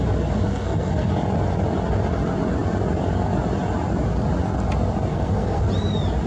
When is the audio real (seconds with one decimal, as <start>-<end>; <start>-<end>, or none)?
0.0-0.5; 1.1-5.1; 5.7-6.3

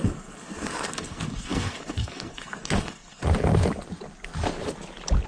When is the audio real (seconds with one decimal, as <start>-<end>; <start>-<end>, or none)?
3.2-5.3

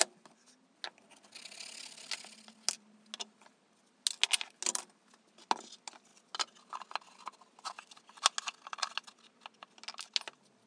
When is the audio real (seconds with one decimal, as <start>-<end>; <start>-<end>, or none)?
0.0-10.7

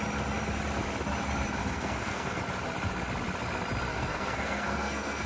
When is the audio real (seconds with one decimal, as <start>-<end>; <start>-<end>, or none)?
0.0-1.6; 2.4-3.9

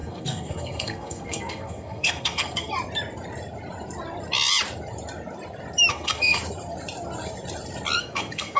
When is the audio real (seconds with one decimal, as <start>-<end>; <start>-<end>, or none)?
2.7-5.9; 6.4-8.0

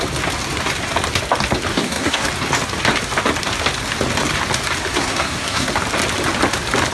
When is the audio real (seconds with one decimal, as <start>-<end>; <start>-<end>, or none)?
0.0-1.7; 2.3-4.9; 5.7-6.9